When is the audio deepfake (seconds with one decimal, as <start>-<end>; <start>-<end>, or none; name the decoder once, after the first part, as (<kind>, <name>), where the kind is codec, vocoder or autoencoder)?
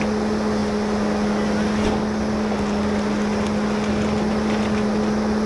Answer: none